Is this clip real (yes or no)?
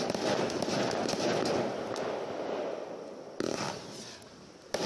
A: yes